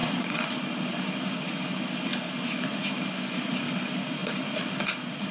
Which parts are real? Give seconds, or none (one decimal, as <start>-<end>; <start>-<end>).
0.7-2.1; 3.5-5.3